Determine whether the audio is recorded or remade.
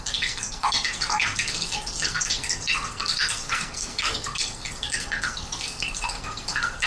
remade